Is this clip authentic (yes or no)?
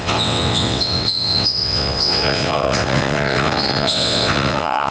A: no